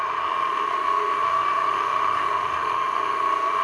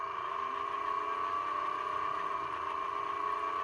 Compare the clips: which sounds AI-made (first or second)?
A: first